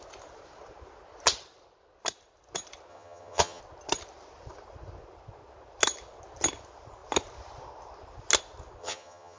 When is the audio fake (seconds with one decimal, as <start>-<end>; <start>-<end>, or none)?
2.9-3.6; 8.8-9.4